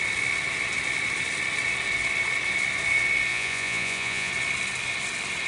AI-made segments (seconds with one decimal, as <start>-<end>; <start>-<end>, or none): 3.3-4.3